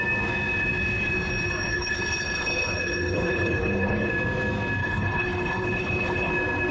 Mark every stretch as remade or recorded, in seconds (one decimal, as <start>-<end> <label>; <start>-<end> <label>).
0.0-1.7 recorded; 1.7-4.1 remade; 4.1-4.8 recorded; 4.8-6.3 remade; 6.3-6.7 recorded